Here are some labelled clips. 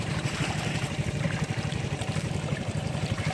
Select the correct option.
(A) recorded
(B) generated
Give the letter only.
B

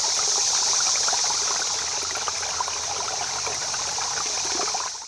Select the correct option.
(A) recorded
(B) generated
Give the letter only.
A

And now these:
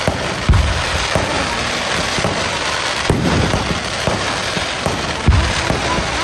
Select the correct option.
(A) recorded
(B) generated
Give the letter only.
B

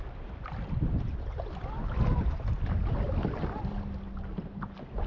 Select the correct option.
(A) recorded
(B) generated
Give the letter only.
A